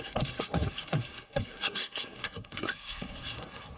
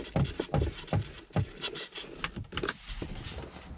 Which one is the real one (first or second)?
second